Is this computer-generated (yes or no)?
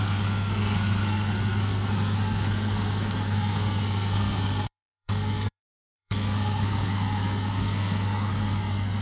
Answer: yes